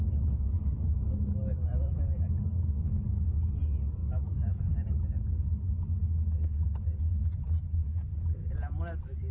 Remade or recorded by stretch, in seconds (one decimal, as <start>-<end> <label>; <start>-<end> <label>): 0.0-4.0 recorded; 4.0-4.6 remade; 4.6-9.3 recorded